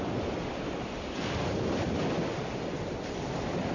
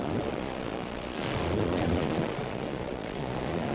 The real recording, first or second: first